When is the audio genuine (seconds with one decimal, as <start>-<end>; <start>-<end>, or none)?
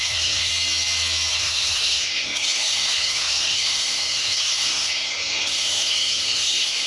0.5-1.3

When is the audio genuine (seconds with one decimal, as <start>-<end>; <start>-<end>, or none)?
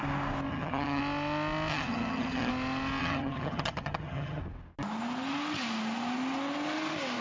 0.0-0.5; 1.0-1.7; 2.5-3.0; 4.4-7.2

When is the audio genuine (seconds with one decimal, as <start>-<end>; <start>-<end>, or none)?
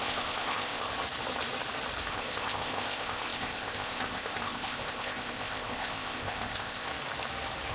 0.9-2.1; 6.9-7.7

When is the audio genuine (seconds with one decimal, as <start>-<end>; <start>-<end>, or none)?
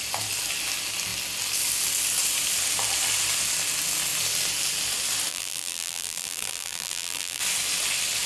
0.0-5.3; 7.4-8.3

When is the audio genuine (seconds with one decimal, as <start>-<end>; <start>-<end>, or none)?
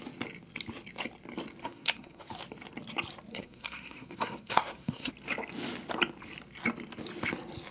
0.0-1.6; 2.3-3.3; 5.1-7.7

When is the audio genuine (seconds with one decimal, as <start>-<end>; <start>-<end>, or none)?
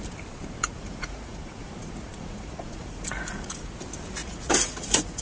0.0-0.6; 3.7-4.2